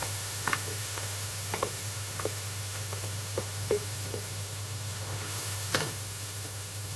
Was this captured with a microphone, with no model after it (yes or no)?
no